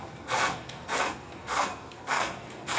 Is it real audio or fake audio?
fake